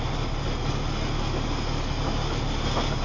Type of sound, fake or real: real